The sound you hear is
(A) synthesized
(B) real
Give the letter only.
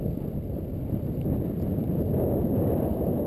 B